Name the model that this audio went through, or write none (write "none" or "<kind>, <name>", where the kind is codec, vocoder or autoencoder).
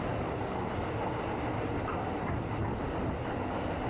none